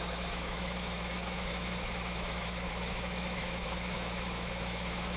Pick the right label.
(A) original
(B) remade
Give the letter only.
B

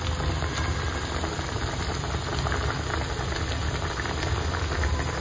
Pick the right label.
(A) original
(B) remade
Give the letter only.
A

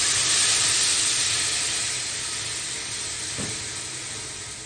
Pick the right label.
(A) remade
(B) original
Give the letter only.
B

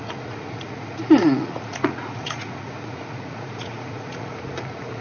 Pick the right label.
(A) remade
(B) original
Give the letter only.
A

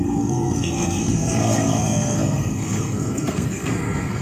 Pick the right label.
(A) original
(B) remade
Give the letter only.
B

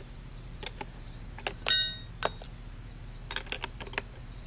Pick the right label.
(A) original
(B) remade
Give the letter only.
A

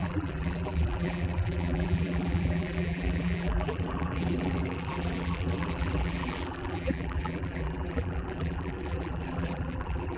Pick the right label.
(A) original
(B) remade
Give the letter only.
B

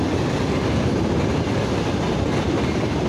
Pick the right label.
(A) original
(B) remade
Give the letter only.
A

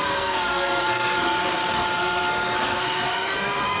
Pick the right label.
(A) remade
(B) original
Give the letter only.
A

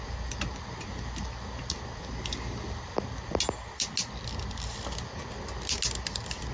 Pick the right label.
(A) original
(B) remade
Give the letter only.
A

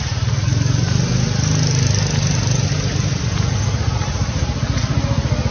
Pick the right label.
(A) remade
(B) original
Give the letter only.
B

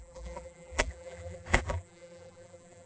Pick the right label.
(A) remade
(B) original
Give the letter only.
A